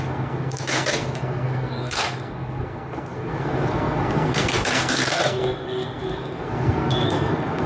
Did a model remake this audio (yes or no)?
yes